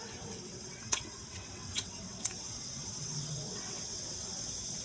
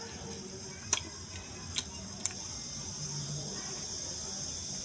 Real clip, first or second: second